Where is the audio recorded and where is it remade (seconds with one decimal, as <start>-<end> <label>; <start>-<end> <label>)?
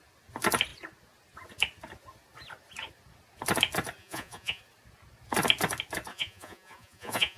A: 0.0-4.0 recorded; 4.0-4.6 remade; 4.6-6.1 recorded; 6.1-7.4 remade